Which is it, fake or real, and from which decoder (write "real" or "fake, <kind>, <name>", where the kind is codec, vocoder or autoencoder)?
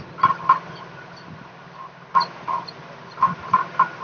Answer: fake, vocoder, BigVGAN v2